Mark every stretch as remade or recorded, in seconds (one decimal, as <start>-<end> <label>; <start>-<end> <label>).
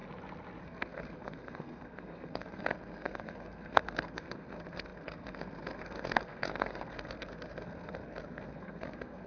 0.0-0.6 recorded; 0.6-9.3 remade